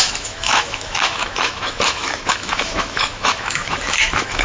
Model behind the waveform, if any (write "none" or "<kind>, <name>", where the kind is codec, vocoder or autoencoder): autoencoder, DAC-VAE